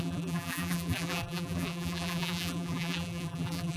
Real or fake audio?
fake